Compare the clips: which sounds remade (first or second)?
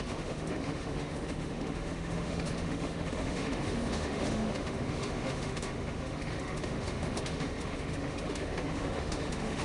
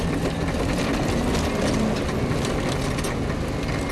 first